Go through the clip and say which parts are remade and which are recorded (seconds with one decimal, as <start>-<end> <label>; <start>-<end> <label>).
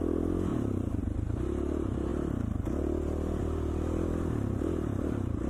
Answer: 0.0-0.5 recorded; 0.5-1.0 remade; 1.0-5.5 recorded